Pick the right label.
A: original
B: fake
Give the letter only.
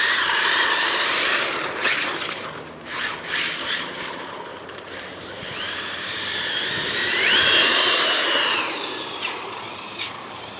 B